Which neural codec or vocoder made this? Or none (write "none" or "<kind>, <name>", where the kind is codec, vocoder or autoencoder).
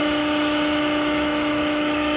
autoencoder, DAC-VAE